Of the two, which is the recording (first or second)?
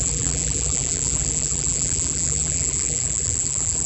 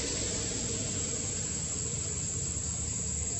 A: second